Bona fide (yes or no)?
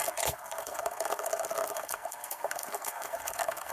no